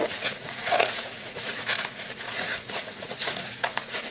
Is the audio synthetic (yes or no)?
yes